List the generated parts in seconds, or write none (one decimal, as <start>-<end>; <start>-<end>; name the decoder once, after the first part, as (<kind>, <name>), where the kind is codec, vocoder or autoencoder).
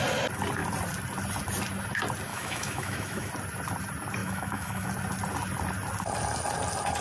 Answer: 2.3-3.3 (autoencoder, DAC-VAE); 4.2-4.9